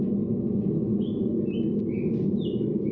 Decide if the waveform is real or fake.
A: real